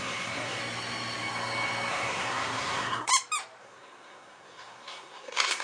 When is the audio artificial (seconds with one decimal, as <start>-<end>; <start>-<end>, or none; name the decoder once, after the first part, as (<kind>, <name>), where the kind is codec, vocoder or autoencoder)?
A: 0.0-0.6 (codec, SNAC); 1.9-3.1; 3.6-5.6